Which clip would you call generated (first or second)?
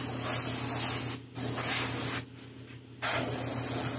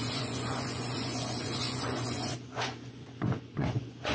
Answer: second